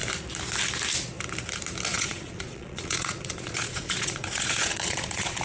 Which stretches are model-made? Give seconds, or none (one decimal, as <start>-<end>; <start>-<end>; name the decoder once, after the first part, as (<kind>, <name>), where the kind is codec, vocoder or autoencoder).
1.9-5.4 (vocoder, Vocos)